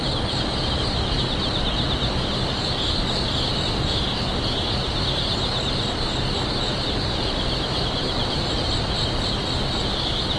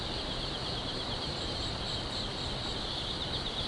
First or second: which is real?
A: first